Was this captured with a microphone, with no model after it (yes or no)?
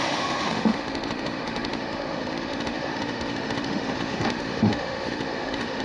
no